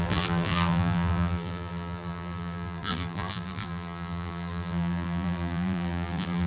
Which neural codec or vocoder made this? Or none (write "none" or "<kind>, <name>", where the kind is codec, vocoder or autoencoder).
vocoder, BigVGAN v2